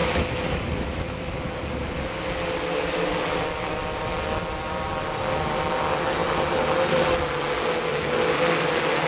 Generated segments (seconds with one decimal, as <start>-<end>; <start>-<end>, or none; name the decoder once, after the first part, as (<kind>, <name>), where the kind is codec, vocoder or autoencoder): 0.0-1.3 (autoencoder, DAC-VAE)